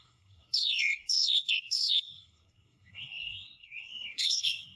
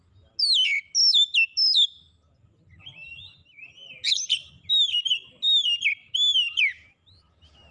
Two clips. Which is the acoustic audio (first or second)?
second